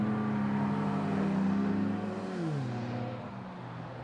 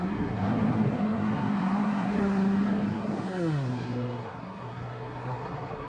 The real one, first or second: first